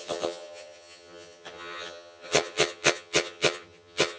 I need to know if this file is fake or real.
fake